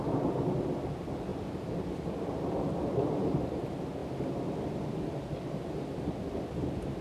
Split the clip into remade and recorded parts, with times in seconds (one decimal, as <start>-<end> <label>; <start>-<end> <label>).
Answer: 0.0-1.3 recorded; 1.3-2.0 remade; 2.0-7.0 recorded